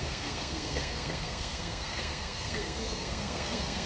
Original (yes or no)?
no